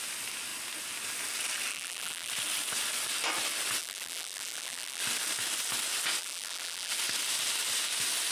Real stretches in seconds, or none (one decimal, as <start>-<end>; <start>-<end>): 0.0-1.7; 2.3-3.8; 5.0-6.2; 6.9-8.3